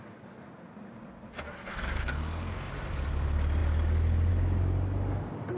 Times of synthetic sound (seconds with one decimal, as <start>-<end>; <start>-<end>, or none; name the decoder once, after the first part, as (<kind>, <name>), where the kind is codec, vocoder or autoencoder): 1.5-2.7 (codec, SNAC)